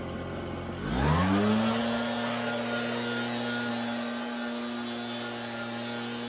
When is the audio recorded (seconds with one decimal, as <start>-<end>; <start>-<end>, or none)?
0.0-6.3

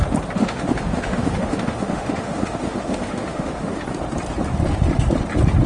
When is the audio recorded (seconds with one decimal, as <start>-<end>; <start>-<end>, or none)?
0.0-0.4; 3.8-5.7

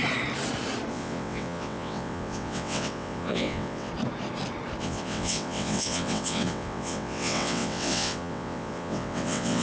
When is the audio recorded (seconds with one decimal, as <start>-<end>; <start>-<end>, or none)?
0.0-0.9; 3.9-4.8

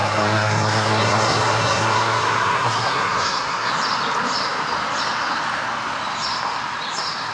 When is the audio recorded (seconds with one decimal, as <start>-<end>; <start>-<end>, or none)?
3.7-7.3

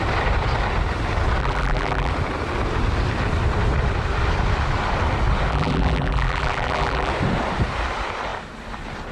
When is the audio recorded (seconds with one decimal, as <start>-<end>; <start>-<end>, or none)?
0.0-1.4; 2.1-5.5; 7.1-9.1

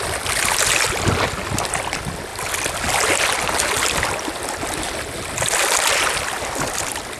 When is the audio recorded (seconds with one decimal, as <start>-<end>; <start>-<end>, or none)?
0.0-7.2

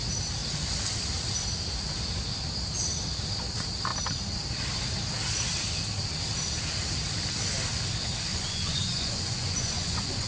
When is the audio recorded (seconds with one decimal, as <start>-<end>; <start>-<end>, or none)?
0.0-8.3

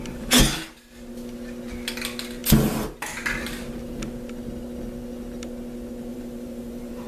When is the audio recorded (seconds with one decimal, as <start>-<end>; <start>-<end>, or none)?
0.0-6.1